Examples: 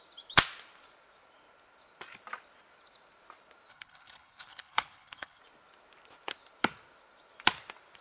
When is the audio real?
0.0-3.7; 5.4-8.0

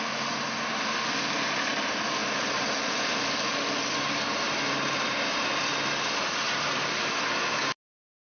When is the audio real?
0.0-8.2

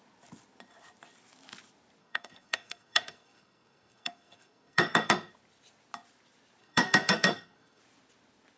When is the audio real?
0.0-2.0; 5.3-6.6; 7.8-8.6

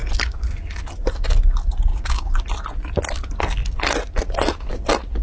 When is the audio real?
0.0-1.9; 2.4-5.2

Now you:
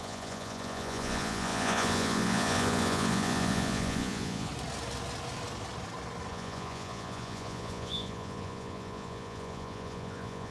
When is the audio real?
4.5-6.3

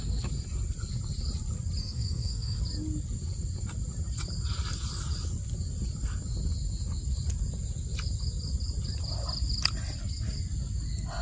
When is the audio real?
0.0-1.8; 2.6-11.2

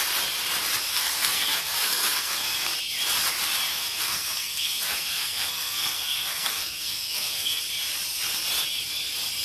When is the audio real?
0.0-0.9; 2.7-3.7; 7.6-9.4

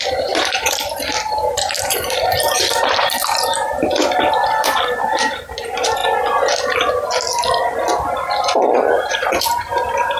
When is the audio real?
6.0-9.1